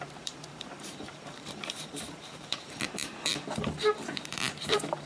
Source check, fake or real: fake